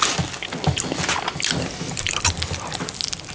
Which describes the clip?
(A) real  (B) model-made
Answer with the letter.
A